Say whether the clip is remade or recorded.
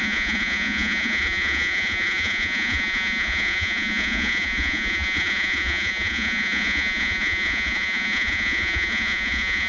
remade